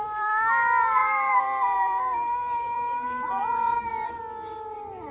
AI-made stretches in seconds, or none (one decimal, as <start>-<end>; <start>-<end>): 1.0-4.1